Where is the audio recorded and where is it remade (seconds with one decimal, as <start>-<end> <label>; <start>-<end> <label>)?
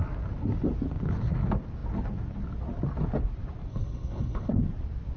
0.0-3.7 recorded; 3.7-4.5 remade; 4.5-5.2 recorded